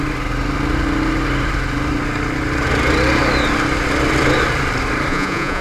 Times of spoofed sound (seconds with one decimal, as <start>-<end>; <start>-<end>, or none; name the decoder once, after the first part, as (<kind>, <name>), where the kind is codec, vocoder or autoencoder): 5.1-5.6 (vocoder, Vocos)